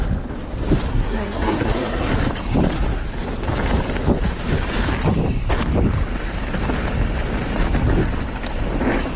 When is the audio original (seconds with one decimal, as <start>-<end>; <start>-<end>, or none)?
0.0-0.9; 2.1-9.2